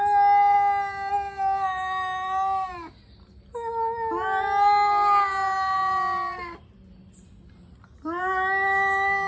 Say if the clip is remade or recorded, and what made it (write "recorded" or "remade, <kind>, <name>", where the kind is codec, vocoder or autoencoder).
recorded